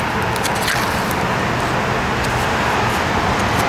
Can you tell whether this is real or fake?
real